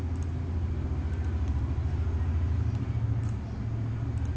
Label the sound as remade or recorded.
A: recorded